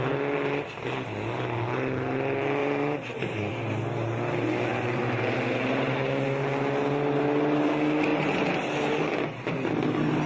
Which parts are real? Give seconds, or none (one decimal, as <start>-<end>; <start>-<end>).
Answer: 0.0-2.6; 3.5-4.7; 6.4-8.1; 8.9-10.3